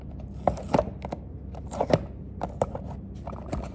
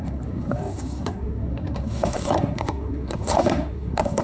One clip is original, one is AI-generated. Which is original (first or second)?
first